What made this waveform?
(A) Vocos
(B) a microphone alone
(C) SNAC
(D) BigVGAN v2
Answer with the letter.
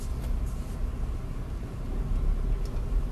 B